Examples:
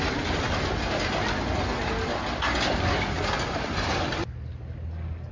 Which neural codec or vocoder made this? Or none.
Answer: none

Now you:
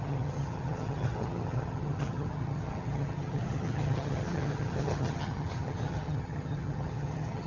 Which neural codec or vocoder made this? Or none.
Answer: vocoder, HiFi-GAN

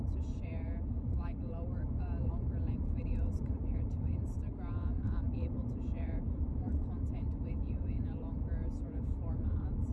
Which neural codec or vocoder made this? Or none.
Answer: vocoder, BigVGAN v2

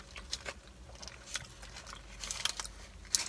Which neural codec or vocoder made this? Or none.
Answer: none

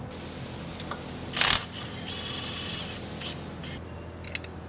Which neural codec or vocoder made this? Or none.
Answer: none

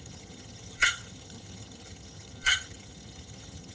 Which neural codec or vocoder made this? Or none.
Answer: vocoder, HiFi-GAN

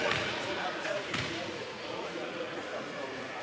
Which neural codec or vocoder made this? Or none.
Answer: vocoder, Vocos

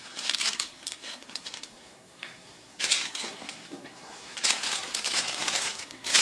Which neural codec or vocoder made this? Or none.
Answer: codec, SNAC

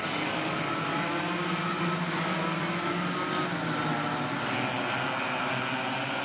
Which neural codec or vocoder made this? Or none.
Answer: none